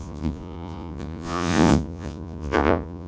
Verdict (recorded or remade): remade